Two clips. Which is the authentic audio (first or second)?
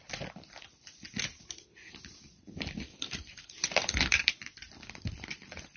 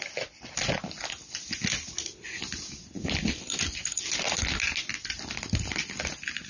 second